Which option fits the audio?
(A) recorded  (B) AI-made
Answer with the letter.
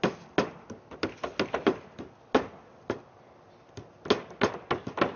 A